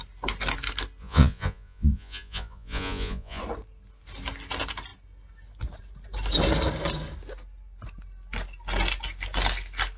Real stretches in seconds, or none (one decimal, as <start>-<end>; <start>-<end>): 0.0-1.0; 3.4-10.0